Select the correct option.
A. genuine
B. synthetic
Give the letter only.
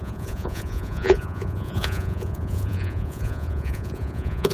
B